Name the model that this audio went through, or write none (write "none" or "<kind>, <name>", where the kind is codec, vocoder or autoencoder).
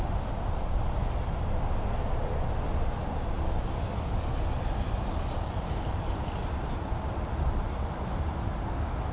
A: none